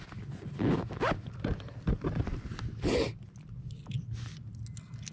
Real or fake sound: real